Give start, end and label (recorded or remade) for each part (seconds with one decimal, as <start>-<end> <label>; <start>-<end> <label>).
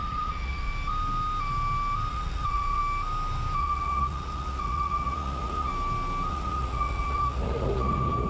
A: 0.0-0.7 remade; 0.7-2.1 recorded; 2.1-2.8 remade; 2.8-3.6 recorded; 3.6-5.7 remade; 5.7-6.3 recorded; 6.3-8.3 remade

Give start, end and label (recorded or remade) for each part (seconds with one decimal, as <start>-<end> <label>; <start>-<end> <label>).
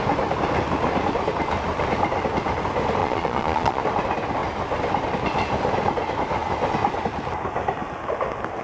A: 0.0-3.0 recorded; 3.0-3.8 remade; 3.8-8.6 recorded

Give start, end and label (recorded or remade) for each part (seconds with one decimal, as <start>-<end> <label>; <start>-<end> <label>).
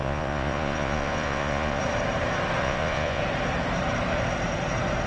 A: 0.0-1.8 remade; 1.8-2.6 recorded; 2.6-3.2 remade; 3.2-5.1 recorded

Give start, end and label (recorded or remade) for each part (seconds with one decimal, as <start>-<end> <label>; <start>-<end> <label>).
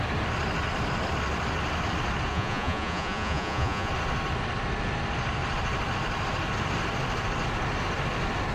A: 0.0-2.3 recorded; 2.3-3.9 remade; 3.9-8.5 recorded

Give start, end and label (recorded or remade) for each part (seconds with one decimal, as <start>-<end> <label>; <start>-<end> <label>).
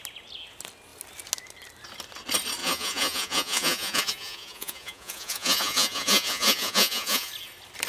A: 0.0-2.6 recorded; 2.6-7.3 remade; 7.3-7.9 recorded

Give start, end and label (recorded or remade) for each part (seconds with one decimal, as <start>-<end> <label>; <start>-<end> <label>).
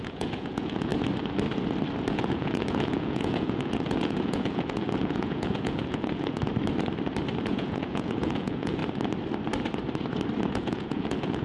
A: 0.0-0.9 remade; 0.9-2.1 recorded; 2.1-6.4 remade; 6.4-7.4 recorded; 7.4-8.8 remade; 8.8-10.5 recorded; 10.5-11.4 remade